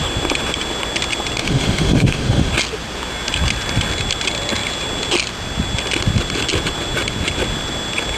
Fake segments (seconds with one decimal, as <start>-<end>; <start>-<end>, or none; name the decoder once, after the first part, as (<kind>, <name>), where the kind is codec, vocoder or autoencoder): 1.4-2.5 (autoencoder, DAC-VAE)